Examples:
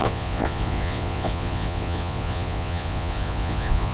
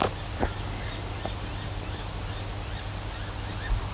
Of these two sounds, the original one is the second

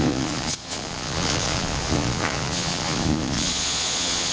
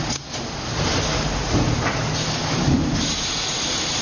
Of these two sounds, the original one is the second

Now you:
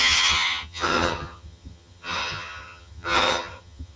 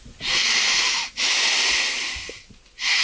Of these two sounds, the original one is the second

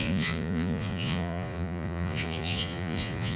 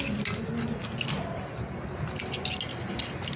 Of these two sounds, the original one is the second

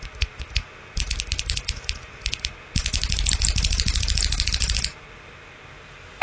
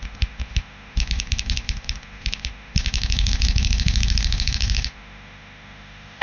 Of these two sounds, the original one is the first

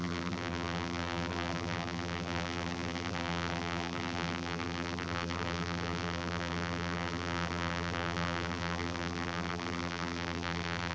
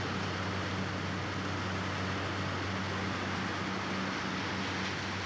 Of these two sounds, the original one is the second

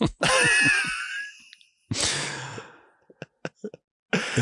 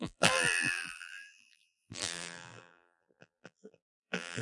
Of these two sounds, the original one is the first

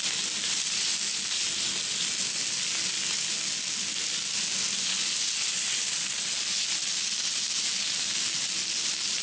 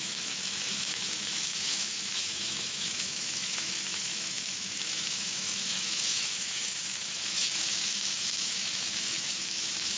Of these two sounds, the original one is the first